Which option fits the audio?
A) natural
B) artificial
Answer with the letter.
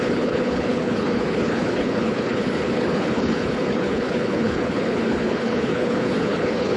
B